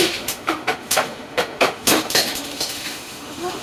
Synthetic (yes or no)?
yes